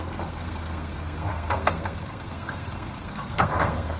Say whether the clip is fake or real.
fake